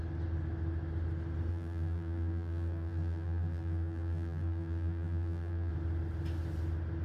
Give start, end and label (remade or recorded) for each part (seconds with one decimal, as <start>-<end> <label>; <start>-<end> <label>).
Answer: 0.0-1.5 recorded; 1.5-5.7 remade; 5.7-7.0 recorded